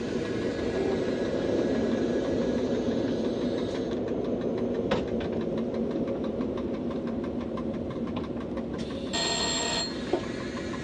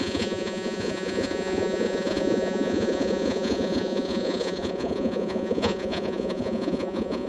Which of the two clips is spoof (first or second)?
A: second